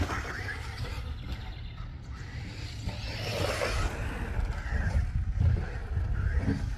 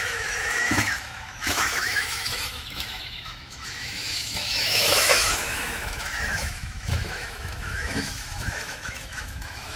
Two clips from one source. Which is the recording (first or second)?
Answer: first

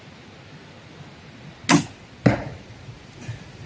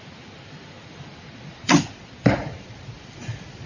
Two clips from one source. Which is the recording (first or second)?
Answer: first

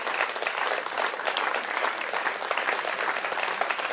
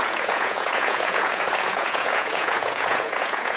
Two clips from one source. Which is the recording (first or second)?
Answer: first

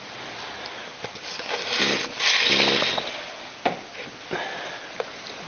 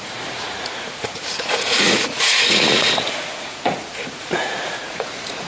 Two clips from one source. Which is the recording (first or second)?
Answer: first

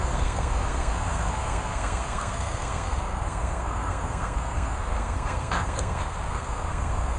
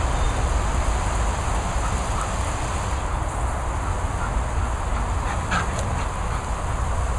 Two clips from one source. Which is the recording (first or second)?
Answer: second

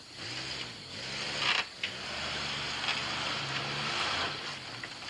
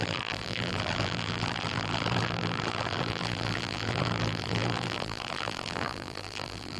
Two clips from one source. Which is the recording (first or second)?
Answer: first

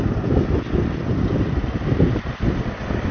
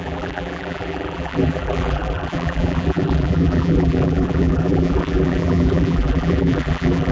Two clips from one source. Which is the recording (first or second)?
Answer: first